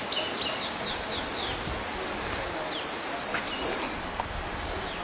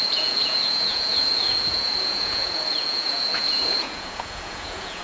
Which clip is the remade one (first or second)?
second